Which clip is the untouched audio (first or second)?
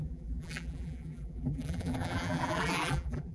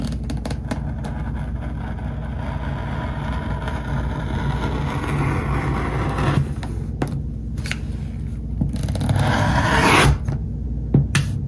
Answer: second